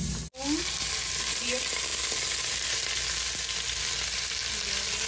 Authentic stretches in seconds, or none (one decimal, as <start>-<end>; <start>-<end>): 0.0-5.1